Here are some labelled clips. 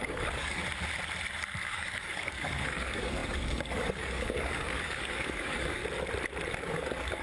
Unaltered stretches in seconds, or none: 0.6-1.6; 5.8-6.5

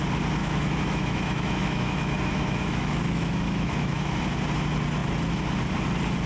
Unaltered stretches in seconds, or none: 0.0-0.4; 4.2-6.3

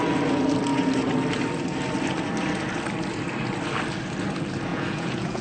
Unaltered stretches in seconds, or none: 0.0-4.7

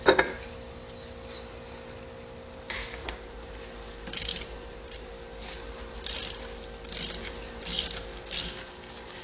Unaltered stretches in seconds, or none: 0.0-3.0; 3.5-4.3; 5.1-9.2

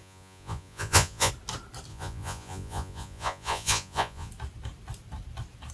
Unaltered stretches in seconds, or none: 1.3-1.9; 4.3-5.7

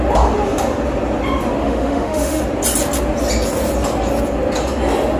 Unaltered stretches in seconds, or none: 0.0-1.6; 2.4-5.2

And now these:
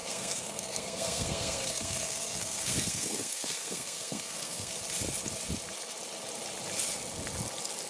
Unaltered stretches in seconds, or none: 4.7-7.9

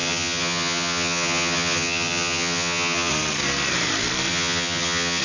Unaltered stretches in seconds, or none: 3.1-4.3